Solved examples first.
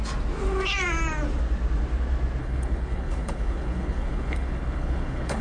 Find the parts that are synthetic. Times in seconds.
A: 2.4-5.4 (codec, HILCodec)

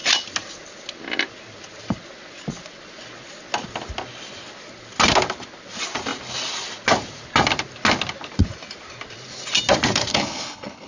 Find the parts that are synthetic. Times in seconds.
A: 10.1-10.9 (codec, HILCodec)

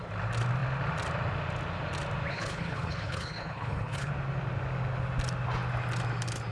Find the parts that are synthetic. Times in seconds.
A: 2.3-4.1 (codec, HILCodec)

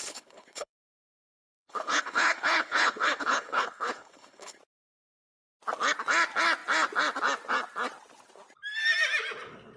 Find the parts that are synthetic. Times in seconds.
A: 0.0-4.6 (codec, HILCodec)

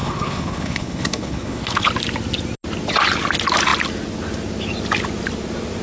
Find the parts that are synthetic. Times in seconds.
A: 0.0-1.9 (codec, HILCodec)

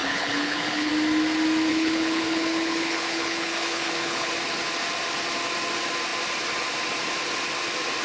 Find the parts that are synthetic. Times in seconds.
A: 0.0-0.9 (codec, HILCodec); 1.7-4.3